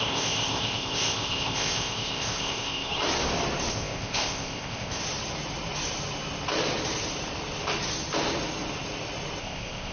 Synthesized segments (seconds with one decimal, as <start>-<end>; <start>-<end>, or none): 0.0-2.9; 3.7-5.0; 9.4-9.9